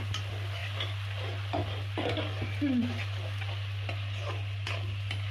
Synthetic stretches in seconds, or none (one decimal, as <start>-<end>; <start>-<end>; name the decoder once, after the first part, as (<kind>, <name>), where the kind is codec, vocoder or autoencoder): none